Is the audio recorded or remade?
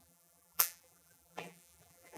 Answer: remade